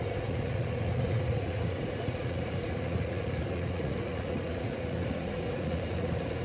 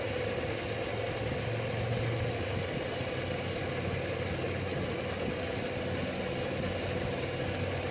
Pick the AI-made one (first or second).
first